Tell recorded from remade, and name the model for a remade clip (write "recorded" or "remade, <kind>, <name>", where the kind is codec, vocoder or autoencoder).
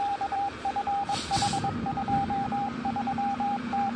remade, vocoder, BigVGAN v2